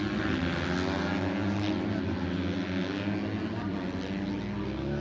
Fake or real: real